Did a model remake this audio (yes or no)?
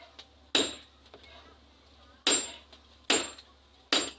no